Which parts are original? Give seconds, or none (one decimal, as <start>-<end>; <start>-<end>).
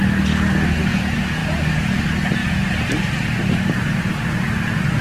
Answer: 0.0-1.4; 2.0-5.0